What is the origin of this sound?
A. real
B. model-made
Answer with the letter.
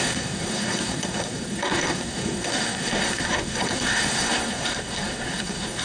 B